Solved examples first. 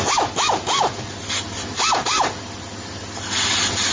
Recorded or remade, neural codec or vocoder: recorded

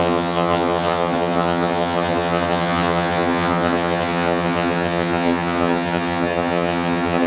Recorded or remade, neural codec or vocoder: remade, vocoder, HiFi-GAN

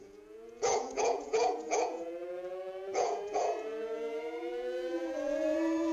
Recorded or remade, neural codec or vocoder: remade, vocoder, Vocos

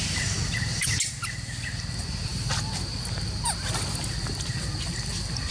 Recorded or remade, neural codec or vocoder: recorded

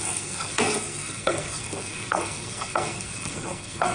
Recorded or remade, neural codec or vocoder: remade, codec, SNAC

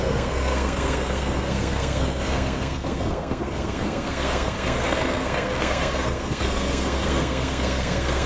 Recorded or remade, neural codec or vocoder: remade, codec, SNAC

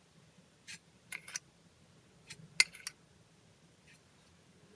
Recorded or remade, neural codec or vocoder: recorded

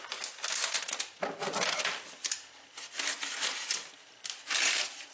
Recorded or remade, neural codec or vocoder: recorded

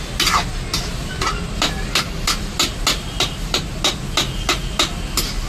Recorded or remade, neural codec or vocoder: recorded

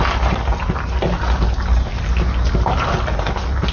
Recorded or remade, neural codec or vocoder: recorded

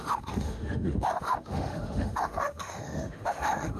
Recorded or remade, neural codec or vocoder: remade, autoencoder, DAC-VAE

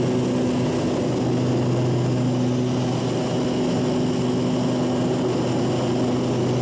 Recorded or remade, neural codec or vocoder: recorded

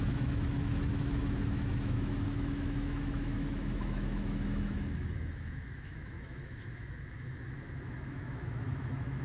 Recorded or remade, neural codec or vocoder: remade, autoencoder, DAC-VAE